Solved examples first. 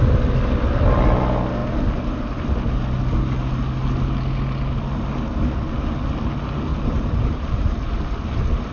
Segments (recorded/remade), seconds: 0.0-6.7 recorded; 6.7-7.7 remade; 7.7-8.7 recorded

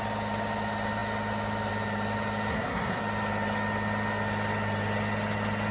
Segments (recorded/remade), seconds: 0.0-2.5 recorded; 2.5-3.0 remade; 3.0-5.7 recorded

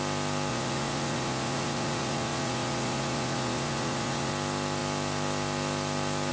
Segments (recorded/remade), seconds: 0.0-0.5 recorded; 0.5-4.3 remade; 4.3-6.3 recorded